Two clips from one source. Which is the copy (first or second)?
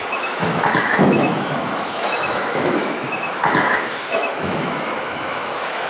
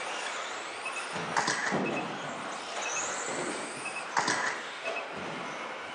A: first